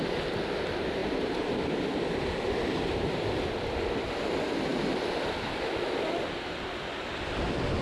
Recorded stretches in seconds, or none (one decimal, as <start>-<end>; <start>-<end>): 0.0-1.0; 2.0-7.8